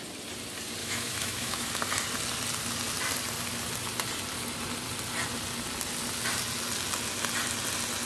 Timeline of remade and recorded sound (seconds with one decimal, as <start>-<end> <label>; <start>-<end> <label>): 0.0-0.8 recorded; 0.8-1.7 remade; 1.7-8.1 recorded